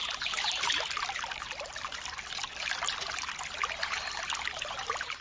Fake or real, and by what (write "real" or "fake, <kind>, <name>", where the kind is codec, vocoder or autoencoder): real